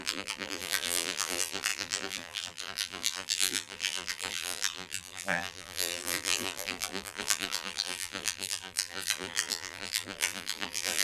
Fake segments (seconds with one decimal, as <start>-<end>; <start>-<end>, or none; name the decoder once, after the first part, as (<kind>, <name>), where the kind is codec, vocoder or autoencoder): 0.0-11.0 (vocoder, BigVGAN v2)